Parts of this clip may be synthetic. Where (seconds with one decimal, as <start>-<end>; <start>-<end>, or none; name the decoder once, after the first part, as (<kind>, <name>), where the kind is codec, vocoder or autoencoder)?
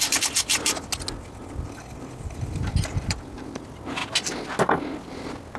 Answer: none